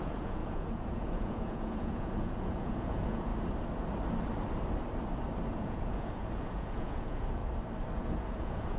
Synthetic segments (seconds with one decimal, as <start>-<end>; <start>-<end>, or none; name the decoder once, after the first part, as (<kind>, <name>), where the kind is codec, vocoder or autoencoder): 0.0-3.3 (vocoder, Vocos); 5.5-7.4; 8.0-8.8